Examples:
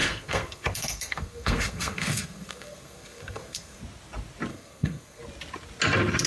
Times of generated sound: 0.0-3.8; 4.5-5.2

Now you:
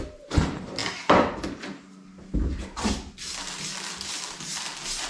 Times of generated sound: none

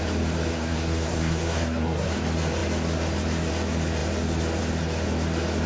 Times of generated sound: 0.5-2.1